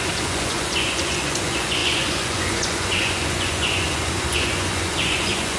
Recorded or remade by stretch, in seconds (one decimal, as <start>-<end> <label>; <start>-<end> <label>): 0.0-5.6 remade